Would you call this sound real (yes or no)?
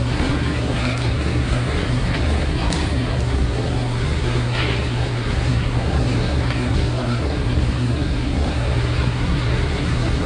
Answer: no